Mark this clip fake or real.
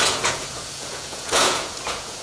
fake